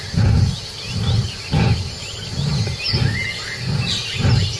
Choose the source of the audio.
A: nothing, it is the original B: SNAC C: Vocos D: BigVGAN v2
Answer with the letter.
A